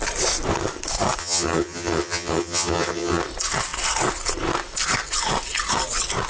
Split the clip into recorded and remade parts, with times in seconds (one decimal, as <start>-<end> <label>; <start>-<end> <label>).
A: 0.0-1.2 recorded; 1.2-3.2 remade; 3.2-6.3 recorded

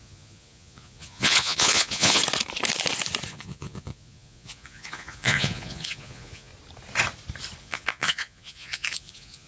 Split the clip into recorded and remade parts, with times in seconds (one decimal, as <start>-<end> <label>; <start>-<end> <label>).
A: 0.0-2.2 remade; 2.2-3.3 recorded; 3.3-6.5 remade; 6.5-7.6 recorded; 7.6-9.5 remade